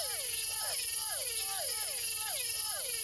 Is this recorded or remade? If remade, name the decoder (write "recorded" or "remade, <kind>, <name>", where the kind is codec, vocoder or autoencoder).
recorded